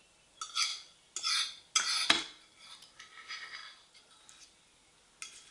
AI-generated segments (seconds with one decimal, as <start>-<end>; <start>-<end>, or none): none